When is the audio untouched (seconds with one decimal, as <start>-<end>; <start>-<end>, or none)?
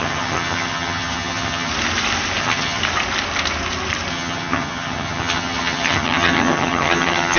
1.7-2.4; 2.8-4.1